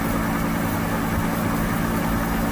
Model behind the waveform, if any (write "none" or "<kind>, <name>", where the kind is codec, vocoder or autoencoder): none